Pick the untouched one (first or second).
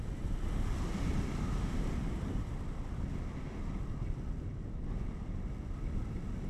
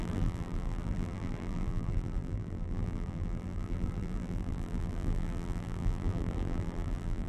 first